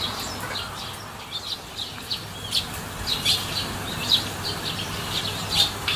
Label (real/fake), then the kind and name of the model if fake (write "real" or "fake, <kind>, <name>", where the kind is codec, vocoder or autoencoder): real